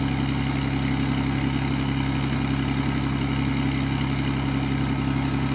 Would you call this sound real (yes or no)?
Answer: yes